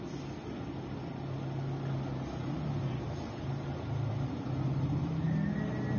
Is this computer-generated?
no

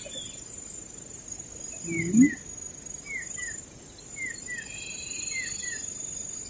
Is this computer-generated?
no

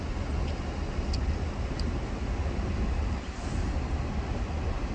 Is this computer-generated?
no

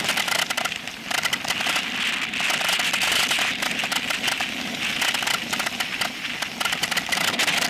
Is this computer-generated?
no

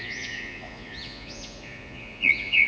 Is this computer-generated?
yes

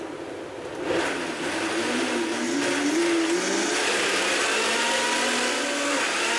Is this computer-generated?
no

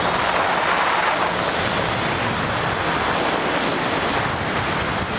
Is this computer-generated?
no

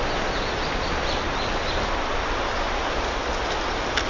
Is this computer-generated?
no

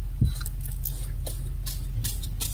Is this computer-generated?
no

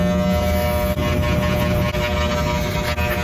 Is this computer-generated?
no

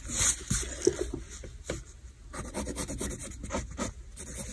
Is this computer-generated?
no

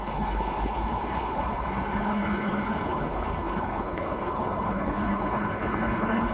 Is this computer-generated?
yes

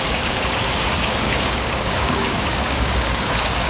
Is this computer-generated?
yes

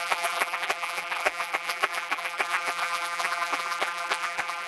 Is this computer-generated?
yes